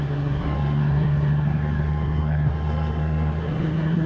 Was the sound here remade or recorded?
remade